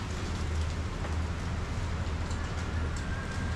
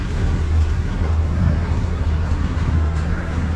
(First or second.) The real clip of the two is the first